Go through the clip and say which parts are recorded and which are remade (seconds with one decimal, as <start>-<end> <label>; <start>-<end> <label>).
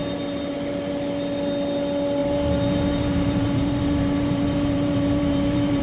0.0-2.2 recorded; 2.2-5.8 remade